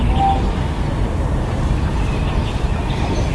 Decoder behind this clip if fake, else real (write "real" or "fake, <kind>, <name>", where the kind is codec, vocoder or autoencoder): real